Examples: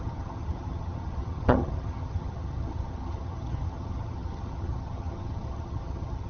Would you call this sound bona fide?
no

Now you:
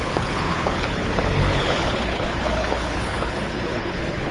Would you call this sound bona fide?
no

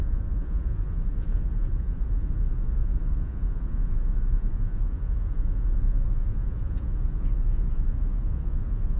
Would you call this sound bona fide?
no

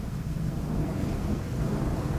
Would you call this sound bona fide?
no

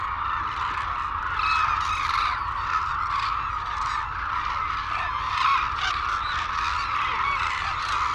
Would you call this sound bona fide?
yes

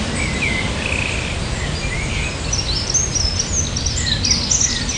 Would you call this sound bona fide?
yes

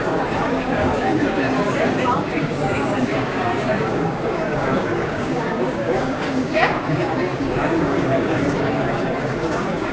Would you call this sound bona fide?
no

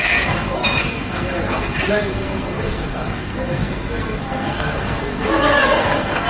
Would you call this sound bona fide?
no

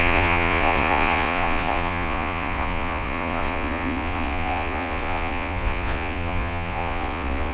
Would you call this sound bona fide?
no